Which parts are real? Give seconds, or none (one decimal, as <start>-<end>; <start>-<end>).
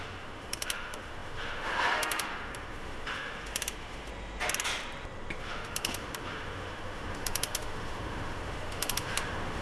4.1-5.4